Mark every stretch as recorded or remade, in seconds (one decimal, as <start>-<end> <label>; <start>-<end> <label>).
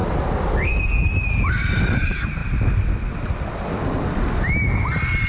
0.0-5.3 recorded